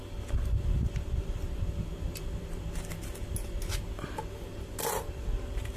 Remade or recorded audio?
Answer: recorded